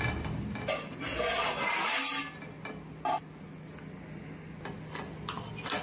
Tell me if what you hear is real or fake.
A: real